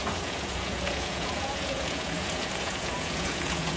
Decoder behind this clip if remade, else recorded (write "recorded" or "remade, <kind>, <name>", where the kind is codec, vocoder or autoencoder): remade, vocoder, Vocos